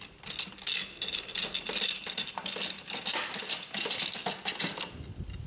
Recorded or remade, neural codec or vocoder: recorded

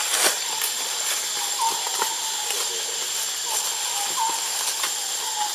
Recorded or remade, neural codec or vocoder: recorded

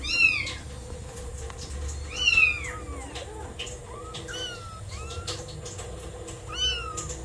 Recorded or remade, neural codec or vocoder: recorded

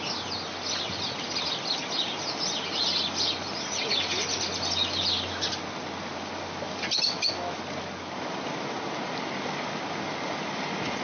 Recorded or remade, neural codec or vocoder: recorded